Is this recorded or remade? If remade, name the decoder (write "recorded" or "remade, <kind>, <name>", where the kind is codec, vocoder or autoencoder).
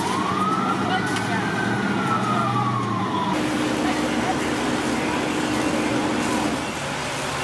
recorded